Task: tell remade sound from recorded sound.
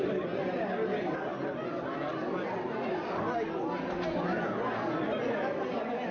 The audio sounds recorded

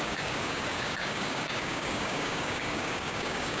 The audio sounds remade